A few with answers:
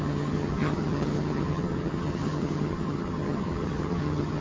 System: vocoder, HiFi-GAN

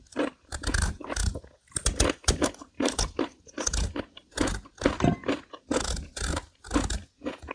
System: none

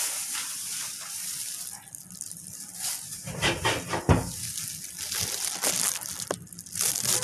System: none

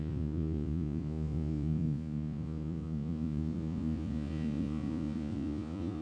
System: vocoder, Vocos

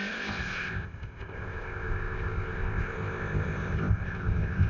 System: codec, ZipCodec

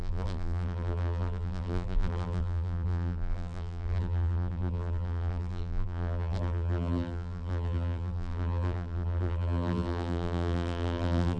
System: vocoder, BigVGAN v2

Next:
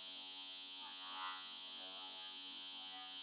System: vocoder, Vocos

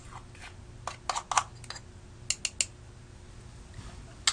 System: none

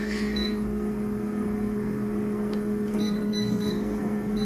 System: codec, SNAC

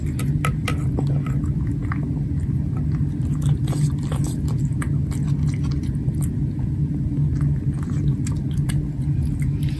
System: none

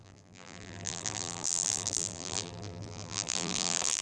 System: vocoder, BigVGAN v2